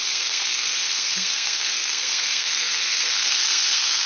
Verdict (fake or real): fake